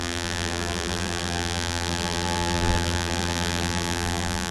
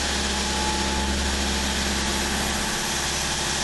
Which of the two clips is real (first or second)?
second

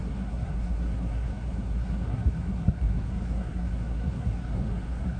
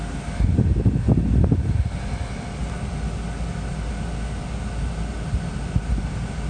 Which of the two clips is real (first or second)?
second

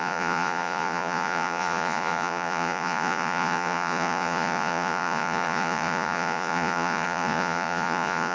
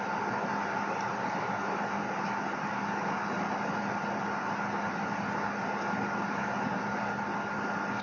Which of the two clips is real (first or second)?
second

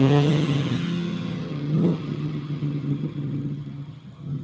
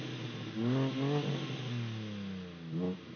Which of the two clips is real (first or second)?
second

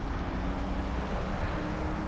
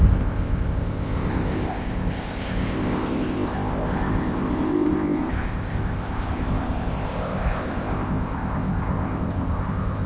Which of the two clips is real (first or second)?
first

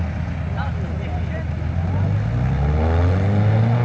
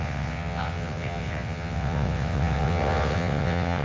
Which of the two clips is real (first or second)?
first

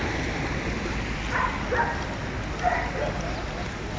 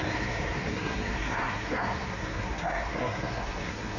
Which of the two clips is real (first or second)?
first